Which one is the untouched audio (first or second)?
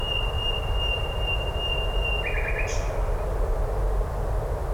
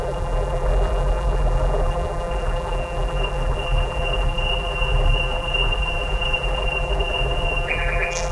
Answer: first